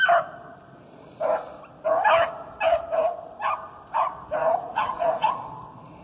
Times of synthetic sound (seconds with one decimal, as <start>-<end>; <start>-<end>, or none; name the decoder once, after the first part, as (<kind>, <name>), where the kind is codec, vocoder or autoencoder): 4.4-5.3 (vocoder, Vocos)